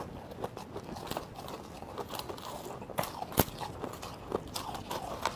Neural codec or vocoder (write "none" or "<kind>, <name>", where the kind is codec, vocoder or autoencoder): none